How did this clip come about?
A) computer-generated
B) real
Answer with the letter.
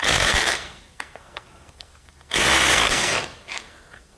A